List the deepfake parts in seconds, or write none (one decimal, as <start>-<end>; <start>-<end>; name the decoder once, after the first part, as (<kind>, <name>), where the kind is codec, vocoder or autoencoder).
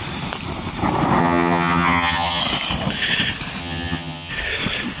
1.2-2.4 (vocoder, HiFi-GAN); 3.6-4.3